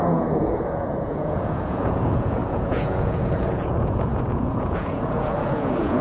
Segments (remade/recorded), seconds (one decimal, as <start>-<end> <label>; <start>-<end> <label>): 0.0-6.0 remade